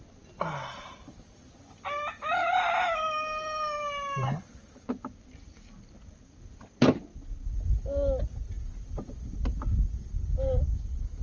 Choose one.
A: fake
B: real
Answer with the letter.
B